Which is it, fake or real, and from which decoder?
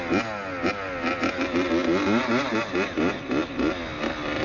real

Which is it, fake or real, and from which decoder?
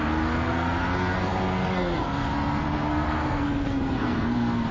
fake, codec, SNAC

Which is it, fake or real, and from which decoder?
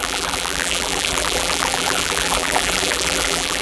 fake, vocoder, BigVGAN v2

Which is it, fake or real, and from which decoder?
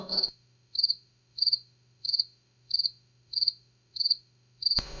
fake, autoencoder, DAC-VAE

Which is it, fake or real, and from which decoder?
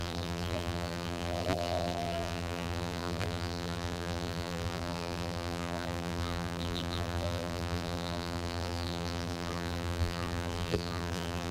fake, vocoder, BigVGAN v2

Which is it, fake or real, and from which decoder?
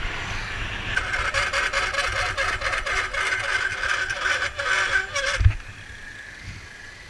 real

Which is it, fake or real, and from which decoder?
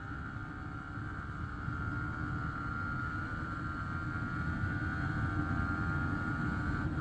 real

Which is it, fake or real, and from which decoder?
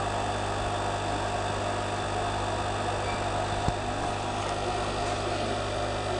real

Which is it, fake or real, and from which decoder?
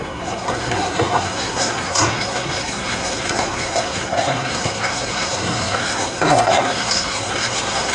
fake, codec, SNAC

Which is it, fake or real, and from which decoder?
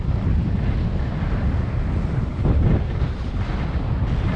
real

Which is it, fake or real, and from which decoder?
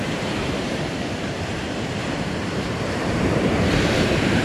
fake, vocoder, BigVGAN v2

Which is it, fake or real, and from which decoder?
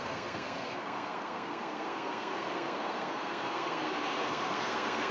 fake, codec, SNAC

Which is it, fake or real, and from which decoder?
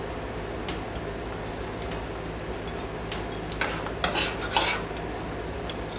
real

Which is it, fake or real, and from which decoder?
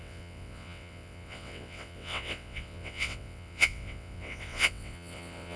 fake, vocoder, WaveNeXt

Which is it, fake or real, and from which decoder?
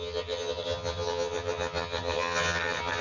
fake, vocoder, HiFi-GAN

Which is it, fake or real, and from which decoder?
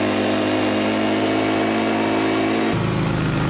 real